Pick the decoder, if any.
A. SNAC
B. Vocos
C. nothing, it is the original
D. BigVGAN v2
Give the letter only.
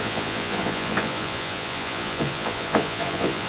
B